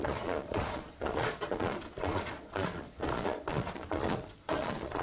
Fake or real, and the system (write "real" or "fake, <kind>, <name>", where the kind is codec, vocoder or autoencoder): fake, vocoder, Vocos